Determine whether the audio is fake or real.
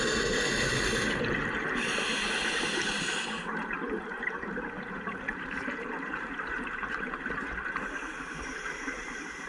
fake